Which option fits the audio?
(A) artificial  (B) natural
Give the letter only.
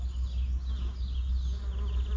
B